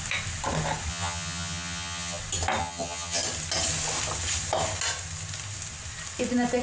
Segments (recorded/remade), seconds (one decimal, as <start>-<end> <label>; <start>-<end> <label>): 0.0-0.9 recorded; 0.9-2.2 remade; 2.2-2.6 recorded; 2.6-3.2 remade; 3.2-6.6 recorded